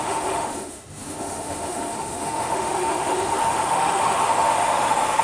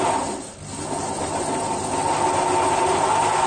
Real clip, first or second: second